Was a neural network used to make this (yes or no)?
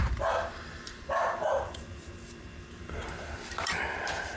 yes